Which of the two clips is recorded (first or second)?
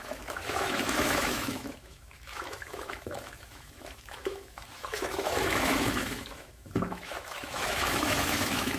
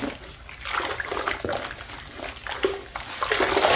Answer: second